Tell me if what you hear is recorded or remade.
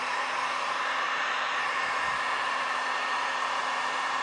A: remade